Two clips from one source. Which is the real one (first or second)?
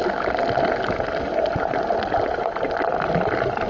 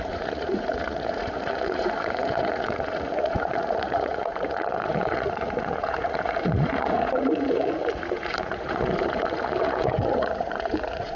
first